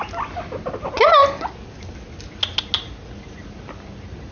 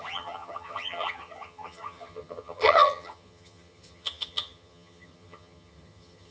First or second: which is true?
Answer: first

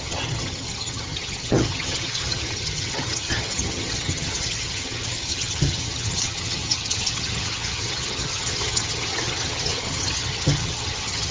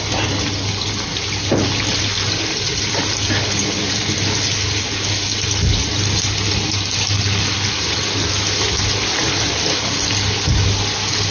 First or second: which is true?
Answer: second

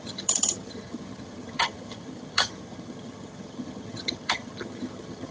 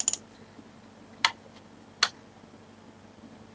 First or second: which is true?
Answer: second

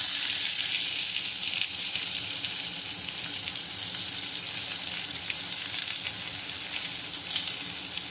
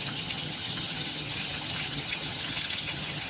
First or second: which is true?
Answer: first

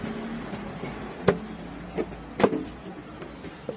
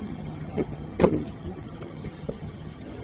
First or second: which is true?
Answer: first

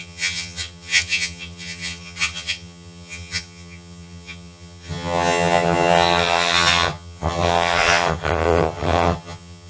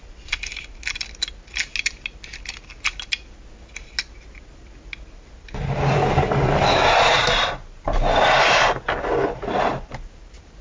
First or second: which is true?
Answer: second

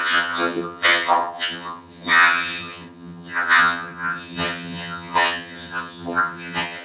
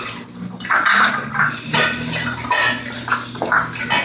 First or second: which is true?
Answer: second